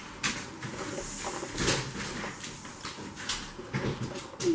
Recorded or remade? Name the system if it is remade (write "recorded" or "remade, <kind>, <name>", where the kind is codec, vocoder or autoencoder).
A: recorded